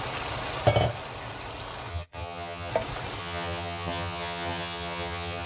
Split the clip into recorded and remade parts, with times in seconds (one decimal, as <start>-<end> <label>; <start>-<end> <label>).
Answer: 0.0-1.9 recorded; 1.9-2.7 remade; 2.7-3.2 recorded; 3.2-5.5 remade